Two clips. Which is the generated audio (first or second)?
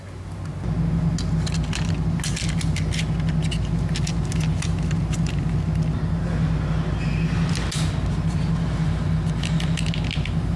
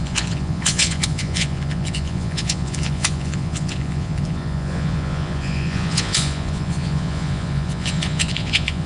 second